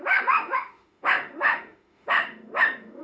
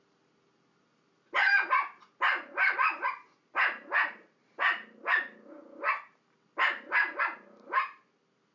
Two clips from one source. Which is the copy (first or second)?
first